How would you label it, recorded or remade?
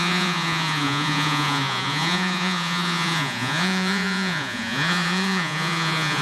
remade